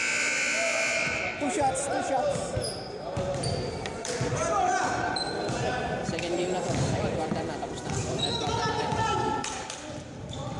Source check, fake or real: fake